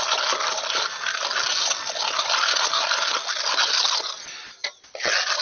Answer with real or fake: real